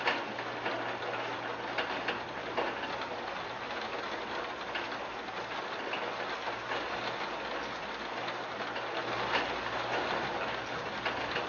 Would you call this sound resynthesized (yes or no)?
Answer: no